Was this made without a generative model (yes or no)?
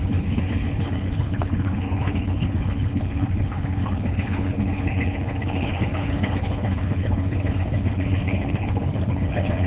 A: no